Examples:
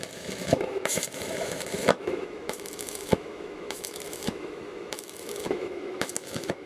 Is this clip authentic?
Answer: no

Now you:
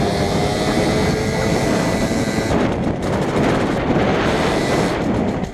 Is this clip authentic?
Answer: yes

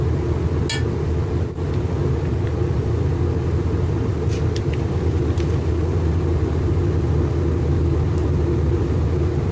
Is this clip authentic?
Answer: yes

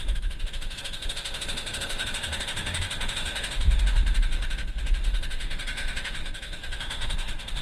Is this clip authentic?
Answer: no